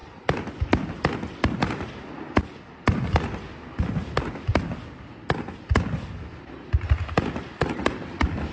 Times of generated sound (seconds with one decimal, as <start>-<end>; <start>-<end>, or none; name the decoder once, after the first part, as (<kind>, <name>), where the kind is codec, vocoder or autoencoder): 0.0-3.8 (vocoder, BigVGAN v2)